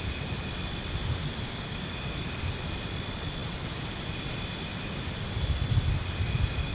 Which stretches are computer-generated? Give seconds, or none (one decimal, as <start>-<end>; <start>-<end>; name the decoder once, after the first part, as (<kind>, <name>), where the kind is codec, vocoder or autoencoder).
none